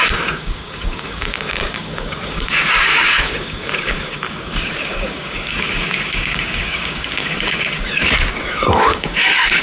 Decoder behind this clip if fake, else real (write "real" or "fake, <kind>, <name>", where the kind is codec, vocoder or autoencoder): fake, codec, DAC